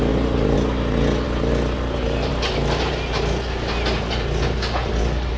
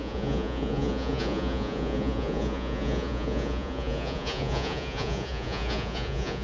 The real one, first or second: first